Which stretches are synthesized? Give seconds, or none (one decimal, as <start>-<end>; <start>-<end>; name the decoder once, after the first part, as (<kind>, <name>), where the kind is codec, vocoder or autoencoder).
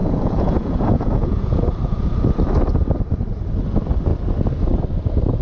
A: 0.0-2.0 (vocoder, Vocos)